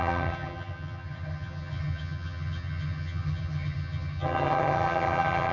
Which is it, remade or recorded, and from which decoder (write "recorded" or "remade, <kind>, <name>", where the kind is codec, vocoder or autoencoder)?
remade, vocoder, HiFi-GAN